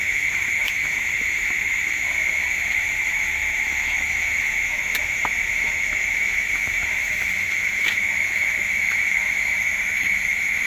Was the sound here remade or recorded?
remade